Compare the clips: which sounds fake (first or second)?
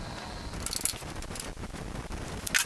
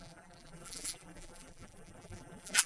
second